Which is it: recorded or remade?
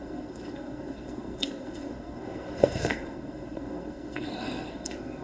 remade